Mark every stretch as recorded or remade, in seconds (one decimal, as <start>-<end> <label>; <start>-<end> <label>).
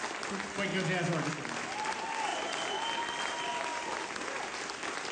0.0-5.1 recorded